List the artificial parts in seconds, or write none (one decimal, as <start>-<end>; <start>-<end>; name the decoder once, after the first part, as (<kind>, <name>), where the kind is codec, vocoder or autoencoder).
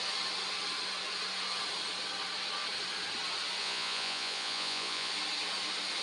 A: 3.6-5.1 (vocoder, Vocos)